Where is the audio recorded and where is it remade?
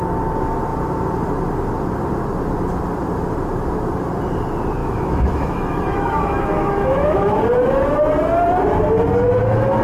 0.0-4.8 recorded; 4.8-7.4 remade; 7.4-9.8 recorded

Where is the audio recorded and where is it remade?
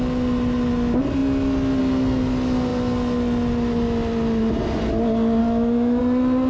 0.0-5.4 recorded; 5.4-6.0 remade; 6.0-6.5 recorded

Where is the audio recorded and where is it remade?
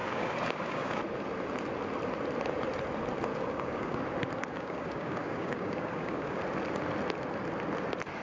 0.0-1.0 remade; 1.0-3.3 recorded; 3.3-4.0 remade; 4.0-4.4 recorded; 4.4-6.4 remade; 6.4-8.2 recorded